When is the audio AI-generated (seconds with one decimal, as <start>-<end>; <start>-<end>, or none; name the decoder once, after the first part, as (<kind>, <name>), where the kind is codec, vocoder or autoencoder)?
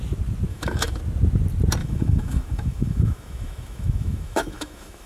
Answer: 0.5-1.0 (autoencoder, DAC-VAE); 1.8-5.1